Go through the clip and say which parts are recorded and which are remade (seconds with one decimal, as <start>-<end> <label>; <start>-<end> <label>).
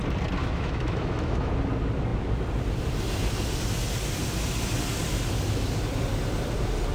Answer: 0.0-0.4 recorded; 0.4-1.5 remade; 1.5-6.9 recorded